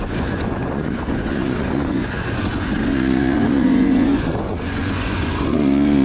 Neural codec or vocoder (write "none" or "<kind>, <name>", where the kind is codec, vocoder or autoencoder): vocoder, Vocos